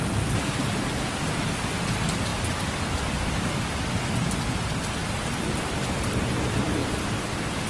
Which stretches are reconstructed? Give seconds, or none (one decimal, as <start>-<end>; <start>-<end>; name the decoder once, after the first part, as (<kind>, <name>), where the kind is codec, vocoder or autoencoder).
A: none